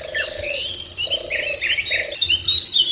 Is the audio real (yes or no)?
yes